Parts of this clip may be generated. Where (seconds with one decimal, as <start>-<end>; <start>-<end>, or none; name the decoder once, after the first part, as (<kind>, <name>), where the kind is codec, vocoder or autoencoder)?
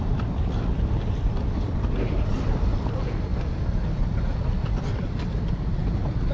none